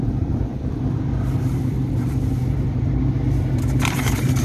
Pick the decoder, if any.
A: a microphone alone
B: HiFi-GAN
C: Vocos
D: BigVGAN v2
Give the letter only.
D